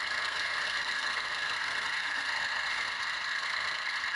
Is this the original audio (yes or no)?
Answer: no